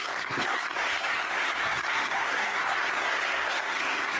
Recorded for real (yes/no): no